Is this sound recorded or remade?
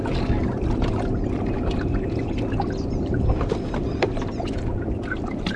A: remade